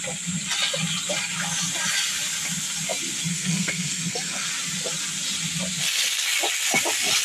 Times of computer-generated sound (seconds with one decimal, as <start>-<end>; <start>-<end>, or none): 3.3-4.5